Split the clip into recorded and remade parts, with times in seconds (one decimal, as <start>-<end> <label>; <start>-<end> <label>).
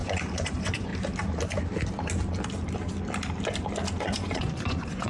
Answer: 0.0-0.9 remade; 0.9-4.0 recorded; 4.0-5.1 remade